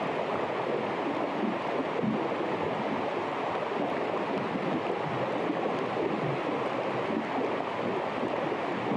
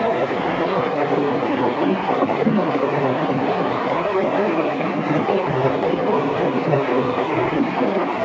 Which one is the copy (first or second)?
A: second